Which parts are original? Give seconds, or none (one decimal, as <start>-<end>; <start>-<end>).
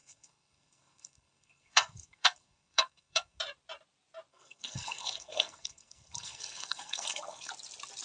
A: 3.4-4.3; 7.5-8.0